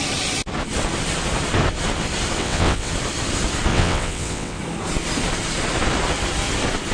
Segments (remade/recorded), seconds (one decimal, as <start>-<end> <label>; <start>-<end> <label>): 0.0-2.4 recorded; 2.4-2.9 remade; 2.9-3.7 recorded; 3.7-4.6 remade; 4.6-6.9 recorded